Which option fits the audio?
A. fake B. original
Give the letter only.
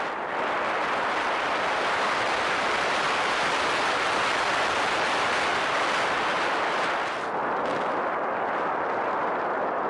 B